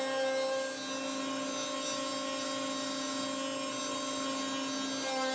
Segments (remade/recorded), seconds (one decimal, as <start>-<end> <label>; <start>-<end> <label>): 0.0-5.3 recorded